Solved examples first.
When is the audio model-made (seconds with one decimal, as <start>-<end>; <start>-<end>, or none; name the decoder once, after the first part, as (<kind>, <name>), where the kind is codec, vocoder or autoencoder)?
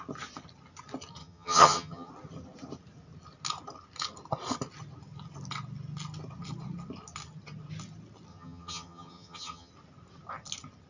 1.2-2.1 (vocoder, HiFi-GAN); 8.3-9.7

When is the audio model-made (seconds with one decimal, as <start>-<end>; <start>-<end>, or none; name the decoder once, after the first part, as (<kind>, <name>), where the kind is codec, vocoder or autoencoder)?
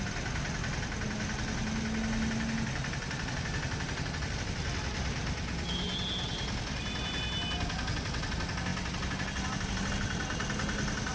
none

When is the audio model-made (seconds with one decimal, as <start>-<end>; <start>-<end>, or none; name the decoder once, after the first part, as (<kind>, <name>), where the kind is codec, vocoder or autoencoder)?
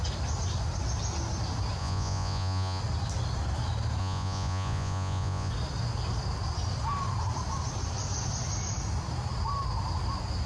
1.8-2.8 (vocoder, Vocos); 4.0-5.5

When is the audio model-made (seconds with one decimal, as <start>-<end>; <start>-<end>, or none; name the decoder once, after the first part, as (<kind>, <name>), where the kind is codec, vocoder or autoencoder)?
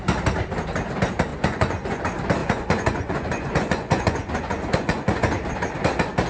1.3-2.0 (vocoder, Vocos); 2.4-5.5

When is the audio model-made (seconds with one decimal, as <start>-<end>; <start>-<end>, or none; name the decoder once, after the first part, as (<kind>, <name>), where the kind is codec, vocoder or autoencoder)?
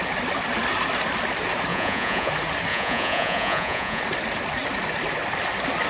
1.7-2.3 (vocoder, Vocos); 2.7-4.0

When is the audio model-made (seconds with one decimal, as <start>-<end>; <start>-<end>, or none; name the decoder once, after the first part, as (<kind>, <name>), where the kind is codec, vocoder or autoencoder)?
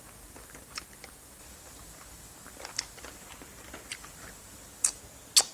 0.0-3.3 (vocoder, BigVGAN v2); 3.9-5.0